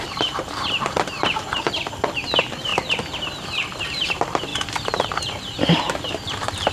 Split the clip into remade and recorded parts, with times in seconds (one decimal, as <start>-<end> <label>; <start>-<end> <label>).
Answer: 0.0-2.7 remade; 2.7-3.8 recorded; 3.8-4.5 remade; 4.5-5.0 recorded; 5.0-6.7 remade